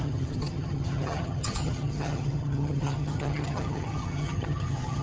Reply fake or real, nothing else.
fake